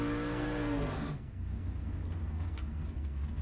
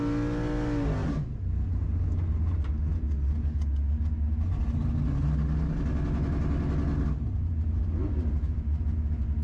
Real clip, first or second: second